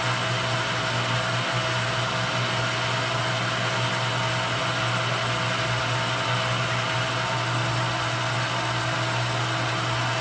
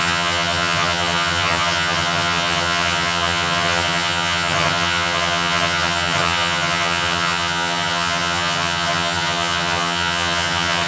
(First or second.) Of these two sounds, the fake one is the second